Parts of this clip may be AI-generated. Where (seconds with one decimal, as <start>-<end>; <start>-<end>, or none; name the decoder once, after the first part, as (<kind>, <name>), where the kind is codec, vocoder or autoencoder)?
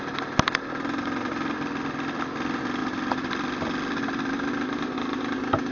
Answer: 2.8-4.4 (vocoder, BigVGAN v2)